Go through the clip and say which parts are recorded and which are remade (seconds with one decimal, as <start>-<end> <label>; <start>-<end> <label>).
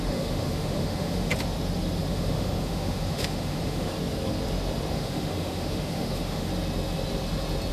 0.0-1.3 remade; 1.3-2.1 recorded; 2.1-3.9 remade; 3.9-4.9 recorded; 4.9-6.5 remade; 6.5-7.7 recorded